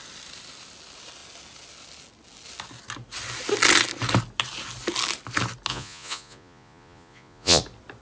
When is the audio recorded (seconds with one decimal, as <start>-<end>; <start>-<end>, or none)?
0.0-5.7; 7.6-8.0